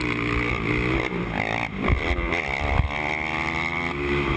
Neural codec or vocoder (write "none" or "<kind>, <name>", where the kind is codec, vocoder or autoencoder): none